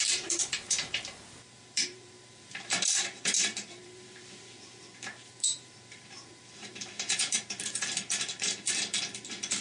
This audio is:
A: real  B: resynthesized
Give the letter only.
B